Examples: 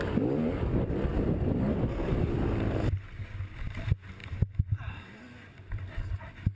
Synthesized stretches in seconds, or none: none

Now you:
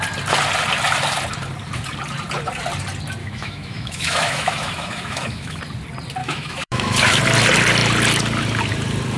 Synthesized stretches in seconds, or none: 3.2-5.6; 6.2-7.2

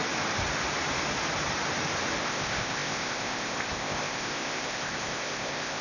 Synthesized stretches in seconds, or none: 2.2-5.8

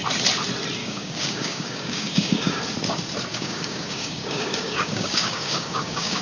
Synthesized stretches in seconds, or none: 0.8-2.6; 3.3-6.2

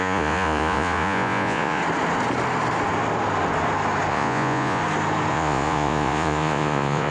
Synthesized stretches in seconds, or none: 0.0-1.8; 4.1-4.8; 5.3-7.1

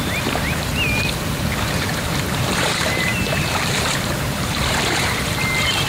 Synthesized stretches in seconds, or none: 0.0-0.7; 1.3-5.9

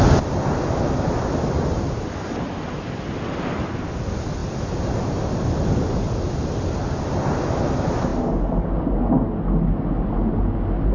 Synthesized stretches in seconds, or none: none

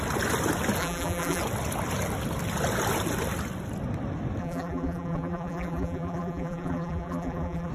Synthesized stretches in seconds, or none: 0.8-1.4; 4.4-7.7